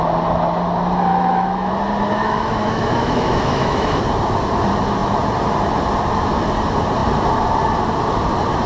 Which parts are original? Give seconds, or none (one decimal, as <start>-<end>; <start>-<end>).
0.0-1.1; 1.7-2.1; 4.0-8.7